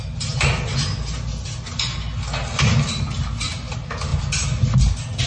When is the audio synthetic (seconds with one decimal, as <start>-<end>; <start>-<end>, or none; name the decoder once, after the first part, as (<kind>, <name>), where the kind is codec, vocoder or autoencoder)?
none